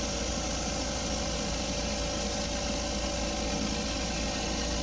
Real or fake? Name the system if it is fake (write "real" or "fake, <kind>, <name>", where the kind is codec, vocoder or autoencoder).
real